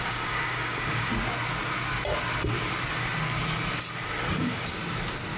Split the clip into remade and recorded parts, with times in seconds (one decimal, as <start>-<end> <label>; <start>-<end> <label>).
0.0-1.1 remade; 1.1-4.3 recorded; 4.3-4.8 remade; 4.8-5.4 recorded